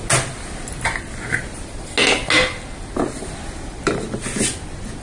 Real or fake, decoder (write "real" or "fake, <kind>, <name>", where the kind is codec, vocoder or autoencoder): real